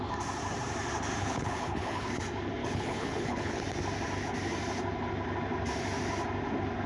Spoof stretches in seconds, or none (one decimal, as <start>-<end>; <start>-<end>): 1.2-2.1; 2.6-3.6